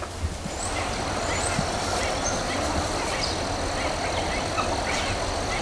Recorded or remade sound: recorded